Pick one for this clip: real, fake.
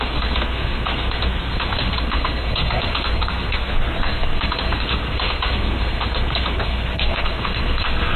fake